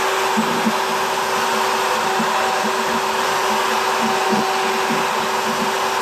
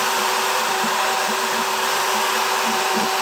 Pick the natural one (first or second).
first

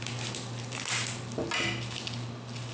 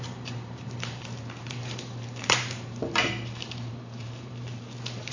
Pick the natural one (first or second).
first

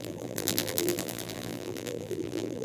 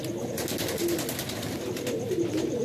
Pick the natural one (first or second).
second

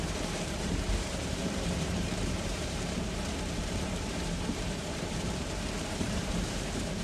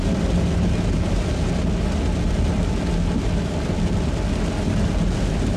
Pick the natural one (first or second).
second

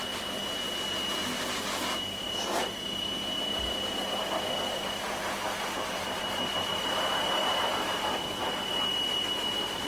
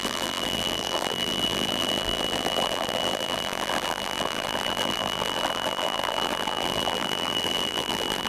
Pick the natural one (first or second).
first